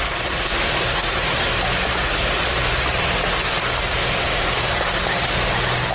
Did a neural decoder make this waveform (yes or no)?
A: no